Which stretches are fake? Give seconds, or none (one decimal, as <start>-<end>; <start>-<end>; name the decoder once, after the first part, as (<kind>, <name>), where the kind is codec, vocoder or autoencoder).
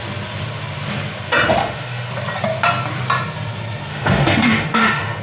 1.6-2.1 (autoencoder, DAC-VAE); 3.9-5.2